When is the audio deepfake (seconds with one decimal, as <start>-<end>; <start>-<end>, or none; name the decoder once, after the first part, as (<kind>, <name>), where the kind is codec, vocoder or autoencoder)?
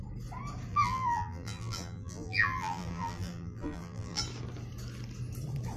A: 0.7-4.2 (vocoder, BigVGAN v2)